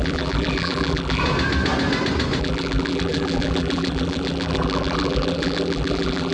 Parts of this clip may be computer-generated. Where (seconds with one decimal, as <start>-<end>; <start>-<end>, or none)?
0.0-1.2; 2.4-6.3